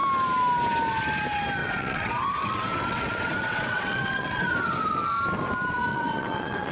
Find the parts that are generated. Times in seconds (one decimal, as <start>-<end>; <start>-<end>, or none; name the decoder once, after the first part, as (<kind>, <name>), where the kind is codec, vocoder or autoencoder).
1.6-4.4 (vocoder, WaveNeXt); 5.9-6.7